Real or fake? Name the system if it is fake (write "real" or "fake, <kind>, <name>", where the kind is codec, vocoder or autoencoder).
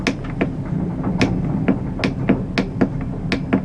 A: real